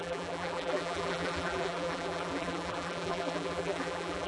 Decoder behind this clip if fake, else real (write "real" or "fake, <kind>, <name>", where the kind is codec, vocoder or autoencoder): fake, vocoder, BigVGAN v2